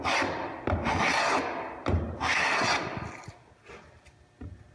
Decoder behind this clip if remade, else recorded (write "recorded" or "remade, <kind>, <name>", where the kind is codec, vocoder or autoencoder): recorded